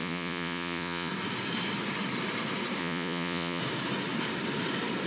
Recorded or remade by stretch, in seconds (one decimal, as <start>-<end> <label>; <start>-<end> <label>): 0.0-1.1 remade; 1.1-2.8 recorded; 2.8-3.6 remade; 3.6-5.1 recorded